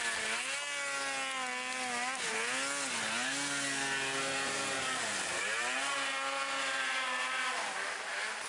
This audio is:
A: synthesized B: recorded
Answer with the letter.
B